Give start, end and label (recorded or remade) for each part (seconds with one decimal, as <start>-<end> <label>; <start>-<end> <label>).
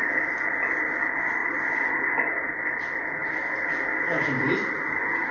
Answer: 0.0-5.3 recorded